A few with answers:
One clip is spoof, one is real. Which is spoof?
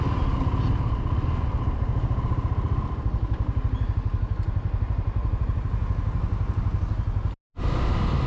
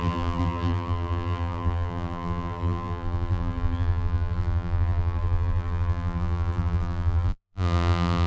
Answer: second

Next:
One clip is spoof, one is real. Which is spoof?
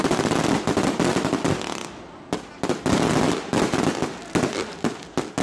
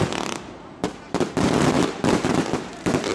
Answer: second